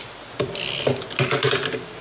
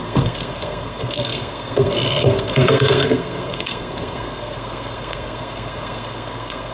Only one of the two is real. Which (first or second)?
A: first